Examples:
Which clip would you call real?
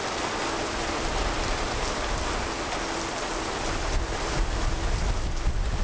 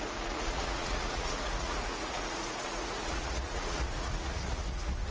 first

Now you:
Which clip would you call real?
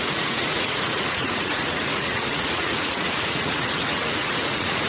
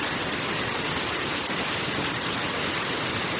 second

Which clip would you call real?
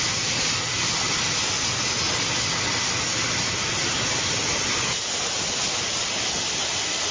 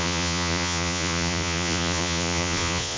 first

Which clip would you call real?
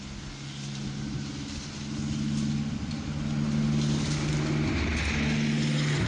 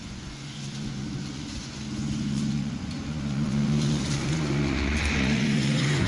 first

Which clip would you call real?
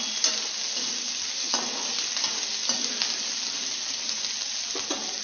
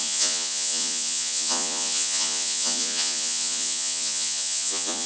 first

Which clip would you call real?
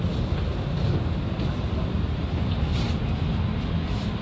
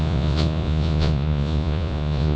first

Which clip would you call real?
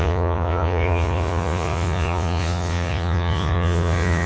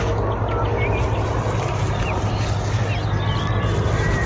second